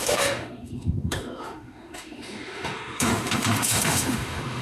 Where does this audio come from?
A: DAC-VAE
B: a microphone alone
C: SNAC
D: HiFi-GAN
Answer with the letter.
A